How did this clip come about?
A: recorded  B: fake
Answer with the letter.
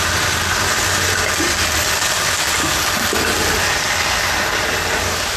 A